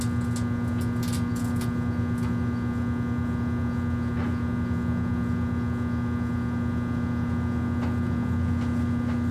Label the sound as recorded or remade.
recorded